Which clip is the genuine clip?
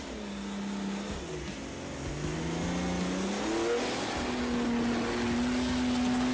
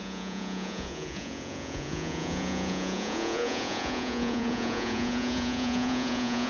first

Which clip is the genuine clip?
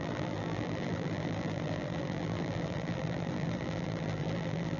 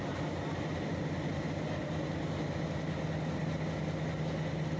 second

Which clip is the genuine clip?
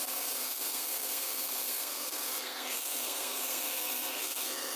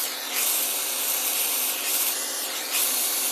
second